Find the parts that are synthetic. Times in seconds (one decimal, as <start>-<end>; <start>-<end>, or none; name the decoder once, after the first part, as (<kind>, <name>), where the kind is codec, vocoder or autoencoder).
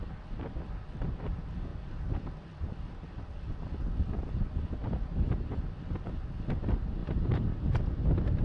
7.0-7.8 (vocoder, BigVGAN v2)